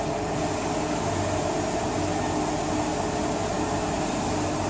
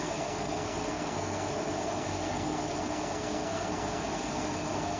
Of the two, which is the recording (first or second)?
first